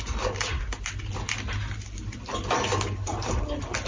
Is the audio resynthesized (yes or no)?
no